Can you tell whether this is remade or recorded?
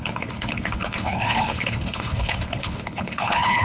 remade